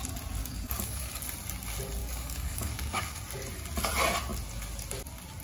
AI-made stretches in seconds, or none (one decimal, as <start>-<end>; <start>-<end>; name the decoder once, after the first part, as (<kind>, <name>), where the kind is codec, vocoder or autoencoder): 0.4-1.2 (codec, DAC); 2.0-3.2